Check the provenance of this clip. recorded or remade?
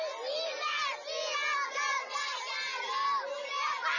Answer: recorded